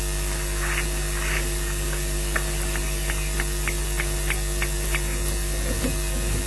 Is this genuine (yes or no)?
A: yes